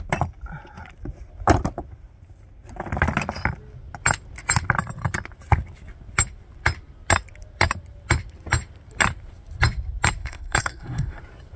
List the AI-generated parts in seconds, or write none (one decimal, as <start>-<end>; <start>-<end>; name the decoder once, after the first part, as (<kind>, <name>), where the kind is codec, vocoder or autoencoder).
10.2-11.2 (codec, SNAC)